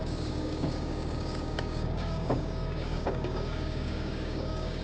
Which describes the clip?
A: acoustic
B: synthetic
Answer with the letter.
B